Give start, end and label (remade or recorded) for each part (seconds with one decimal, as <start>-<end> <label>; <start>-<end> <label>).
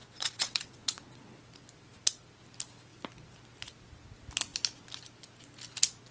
0.0-1.4 remade; 1.4-6.1 recorded